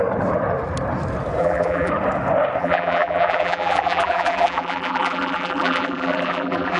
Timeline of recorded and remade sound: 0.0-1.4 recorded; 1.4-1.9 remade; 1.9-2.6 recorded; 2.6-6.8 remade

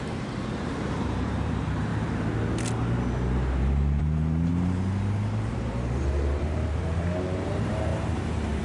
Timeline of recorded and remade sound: 0.0-1.9 remade; 1.9-4.0 recorded; 4.0-4.5 remade; 4.5-5.5 recorded; 5.5-8.6 remade

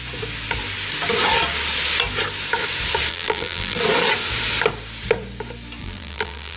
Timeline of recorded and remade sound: 0.0-3.1 recorded; 3.1-3.8 remade; 3.8-5.8 recorded; 5.8-6.6 remade

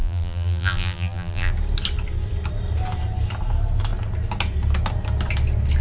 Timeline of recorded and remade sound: 0.0-1.5 remade; 1.5-5.8 recorded

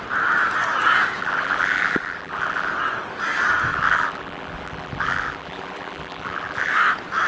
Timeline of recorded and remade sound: 0.0-1.2 recorded; 1.2-2.7 remade; 2.7-3.7 recorded; 3.7-6.7 remade; 6.7-7.3 recorded